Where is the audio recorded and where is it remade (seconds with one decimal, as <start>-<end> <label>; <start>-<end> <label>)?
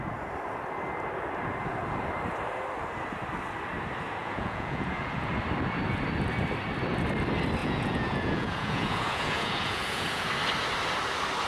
0.0-4.2 recorded; 4.2-5.3 remade; 5.3-7.6 recorded; 7.6-10.3 remade; 10.3-11.5 recorded